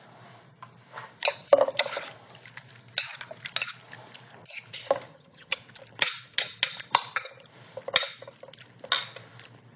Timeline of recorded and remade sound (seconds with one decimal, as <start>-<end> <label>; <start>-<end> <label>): 0.0-5.1 recorded; 5.1-5.6 remade; 5.6-9.8 recorded